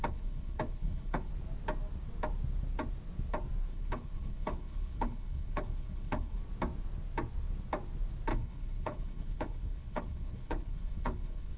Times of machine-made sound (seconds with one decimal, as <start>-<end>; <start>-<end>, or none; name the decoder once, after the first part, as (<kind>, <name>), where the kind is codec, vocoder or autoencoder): 0.0-1.3 (codec, HILCodec); 3.7-6.4; 8.3-11.6